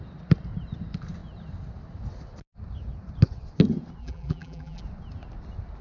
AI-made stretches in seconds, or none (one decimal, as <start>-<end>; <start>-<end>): 4.0-4.8